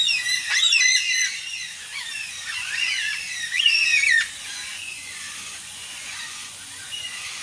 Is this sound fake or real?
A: fake